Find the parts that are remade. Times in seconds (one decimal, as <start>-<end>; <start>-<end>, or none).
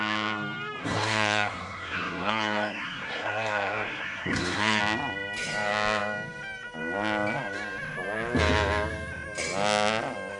0.8-4.8